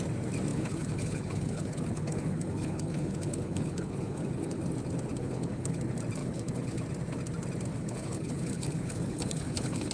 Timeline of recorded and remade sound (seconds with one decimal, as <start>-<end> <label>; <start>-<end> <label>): 0.0-0.5 recorded; 0.5-4.6 remade; 4.6-5.2 recorded; 5.2-5.8 remade; 5.8-6.2 recorded; 6.2-6.8 remade; 6.8-7.7 recorded; 7.7-9.9 remade